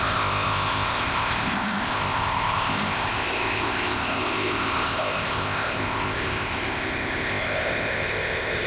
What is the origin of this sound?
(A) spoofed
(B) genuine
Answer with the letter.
A